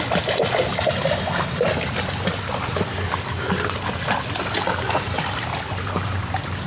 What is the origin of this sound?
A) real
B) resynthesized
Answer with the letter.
A